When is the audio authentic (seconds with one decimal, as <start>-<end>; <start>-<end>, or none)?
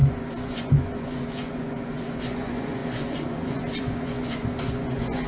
none